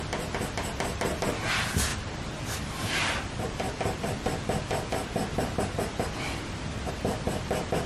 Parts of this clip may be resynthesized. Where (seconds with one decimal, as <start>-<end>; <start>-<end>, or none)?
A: none